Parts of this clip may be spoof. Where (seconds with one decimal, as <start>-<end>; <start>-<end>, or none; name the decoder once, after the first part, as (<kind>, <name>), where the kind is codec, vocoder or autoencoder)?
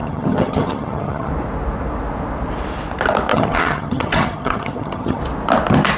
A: 0.0-1.3 (vocoder, HiFi-GAN); 3.3-5.2